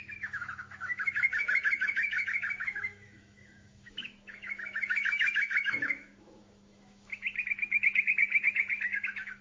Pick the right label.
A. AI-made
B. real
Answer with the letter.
A